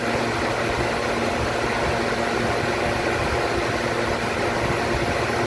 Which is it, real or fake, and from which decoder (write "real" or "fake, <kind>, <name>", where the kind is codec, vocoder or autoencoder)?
real